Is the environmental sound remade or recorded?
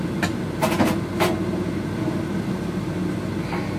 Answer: recorded